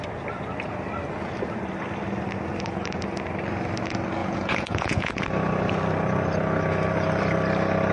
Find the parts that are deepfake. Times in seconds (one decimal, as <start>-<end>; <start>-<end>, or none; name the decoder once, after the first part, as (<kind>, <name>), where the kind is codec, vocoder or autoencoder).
4.2-5.2 (vocoder, Vocos)